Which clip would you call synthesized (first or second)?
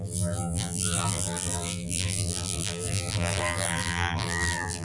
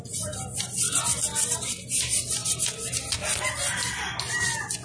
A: first